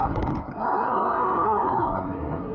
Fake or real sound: fake